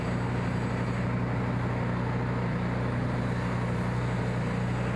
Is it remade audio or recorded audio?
recorded